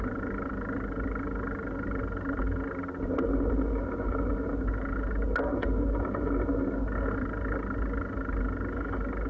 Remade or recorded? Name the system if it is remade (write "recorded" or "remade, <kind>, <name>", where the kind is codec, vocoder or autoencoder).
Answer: recorded